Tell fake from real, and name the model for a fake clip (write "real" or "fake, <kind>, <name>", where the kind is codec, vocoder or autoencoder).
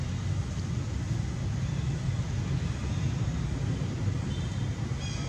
real